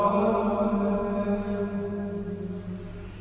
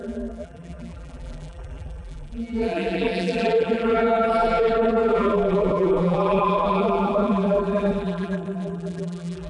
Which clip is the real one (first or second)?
first